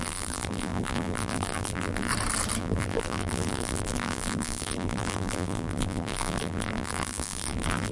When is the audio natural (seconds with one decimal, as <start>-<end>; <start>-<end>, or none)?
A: 2.1-2.6